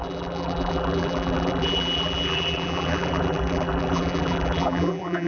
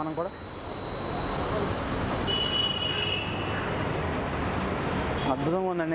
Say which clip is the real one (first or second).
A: second